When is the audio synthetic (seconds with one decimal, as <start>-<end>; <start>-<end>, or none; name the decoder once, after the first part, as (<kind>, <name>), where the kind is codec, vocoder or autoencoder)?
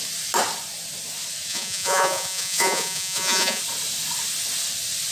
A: 1.5-3.6 (vocoder, Vocos)